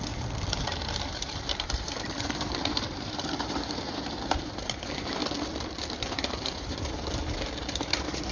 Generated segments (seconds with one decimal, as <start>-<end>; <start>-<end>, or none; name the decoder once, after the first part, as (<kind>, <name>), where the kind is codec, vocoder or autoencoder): 0.5-5.2 (vocoder, BigVGAN v2); 5.9-8.3